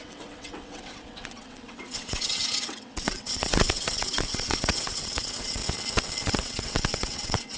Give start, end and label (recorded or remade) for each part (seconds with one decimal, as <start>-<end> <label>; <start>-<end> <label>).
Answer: 0.0-5.6 remade; 5.6-6.3 recorded; 6.3-7.6 remade